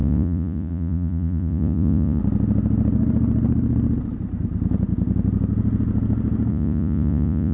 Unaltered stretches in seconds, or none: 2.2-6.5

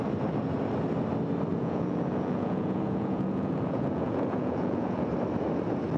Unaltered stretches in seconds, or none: 0.0-1.5; 5.1-6.0

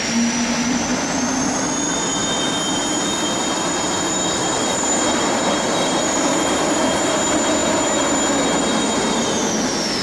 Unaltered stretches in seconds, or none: 0.0-0.9; 1.6-4.4; 6.5-10.0

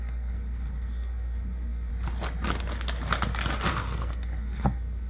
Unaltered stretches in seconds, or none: 1.9-3.7

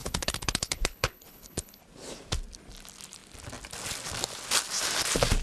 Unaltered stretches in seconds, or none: 1.8-5.4

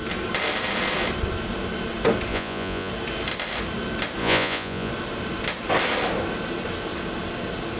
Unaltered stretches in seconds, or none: 0.0-2.3; 2.9-4.2; 4.9-7.8

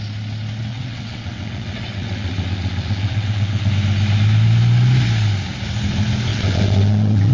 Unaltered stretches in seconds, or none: 0.0-0.7; 3.7-6.3

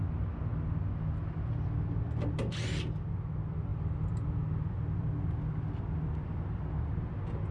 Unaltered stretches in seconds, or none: 0.0-7.5